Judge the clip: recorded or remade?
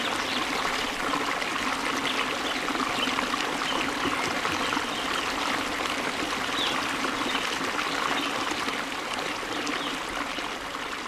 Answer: recorded